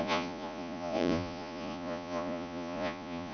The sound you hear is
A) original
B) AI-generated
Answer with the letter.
B